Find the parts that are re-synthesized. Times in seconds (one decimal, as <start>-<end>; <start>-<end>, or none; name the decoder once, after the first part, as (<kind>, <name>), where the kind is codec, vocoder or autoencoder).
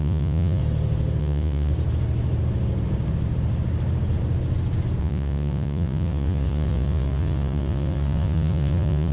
0.0-0.6 (vocoder, Vocos); 1.2-1.7; 5.0-9.1